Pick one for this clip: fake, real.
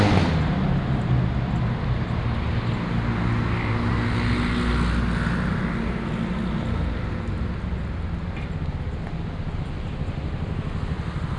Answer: real